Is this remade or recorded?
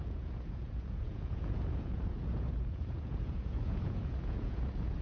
remade